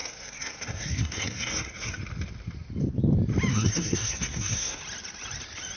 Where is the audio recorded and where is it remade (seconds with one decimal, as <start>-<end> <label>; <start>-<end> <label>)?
0.0-2.0 remade; 2.0-3.5 recorded; 3.5-4.8 remade; 4.8-5.8 recorded